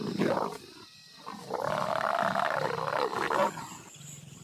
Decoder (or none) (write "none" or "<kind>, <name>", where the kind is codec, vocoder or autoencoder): none